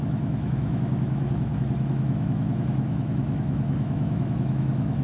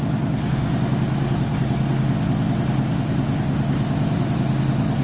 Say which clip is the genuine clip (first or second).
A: second